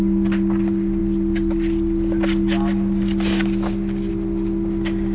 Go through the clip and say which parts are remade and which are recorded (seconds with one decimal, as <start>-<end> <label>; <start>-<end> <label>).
0.0-5.1 recorded